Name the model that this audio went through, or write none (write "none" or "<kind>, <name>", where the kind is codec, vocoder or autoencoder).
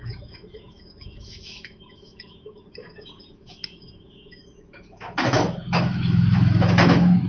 autoencoder, DAC-VAE